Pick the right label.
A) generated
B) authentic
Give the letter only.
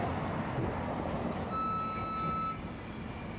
B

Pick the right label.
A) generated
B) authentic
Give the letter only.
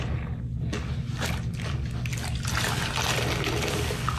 B